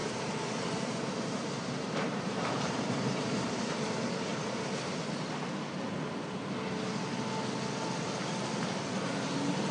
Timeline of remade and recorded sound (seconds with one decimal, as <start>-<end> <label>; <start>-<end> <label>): 0.0-3.8 remade; 3.8-9.7 recorded